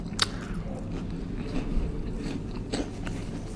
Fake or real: real